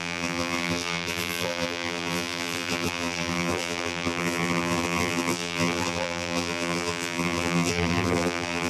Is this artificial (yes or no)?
yes